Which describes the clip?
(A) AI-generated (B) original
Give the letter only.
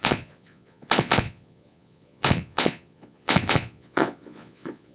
A